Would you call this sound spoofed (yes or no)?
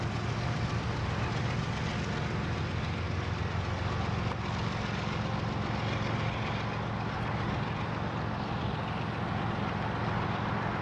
no